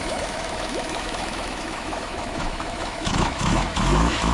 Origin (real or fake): fake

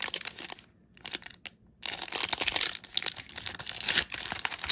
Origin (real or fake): real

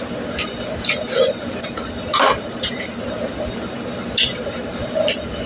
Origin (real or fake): fake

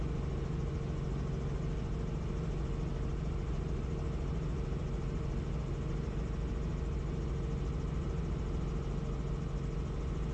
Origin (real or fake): real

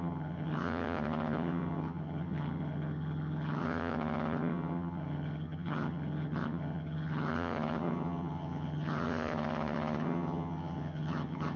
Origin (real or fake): fake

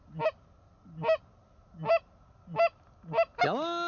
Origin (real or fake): real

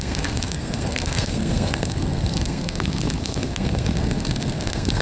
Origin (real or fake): fake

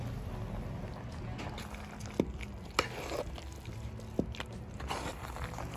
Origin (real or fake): real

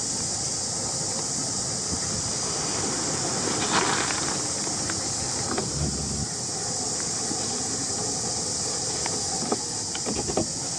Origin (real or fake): real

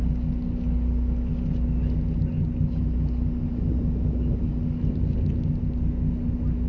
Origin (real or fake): real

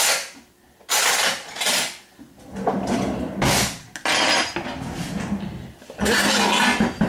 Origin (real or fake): real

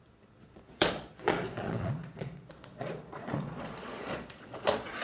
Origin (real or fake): fake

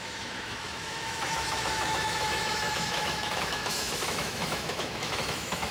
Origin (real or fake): fake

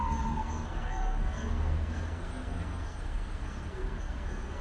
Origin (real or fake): fake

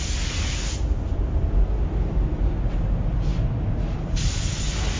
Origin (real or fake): real